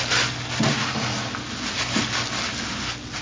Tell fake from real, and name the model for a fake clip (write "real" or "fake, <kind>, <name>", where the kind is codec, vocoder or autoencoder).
real